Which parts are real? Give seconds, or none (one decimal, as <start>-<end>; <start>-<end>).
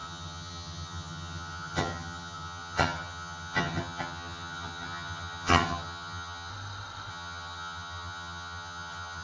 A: 6.5-7.1